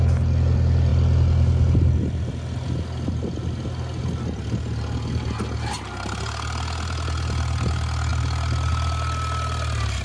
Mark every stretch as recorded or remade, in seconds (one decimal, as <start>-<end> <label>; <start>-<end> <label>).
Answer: 0.0-10.0 recorded